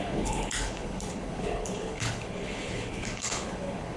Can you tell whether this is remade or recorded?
remade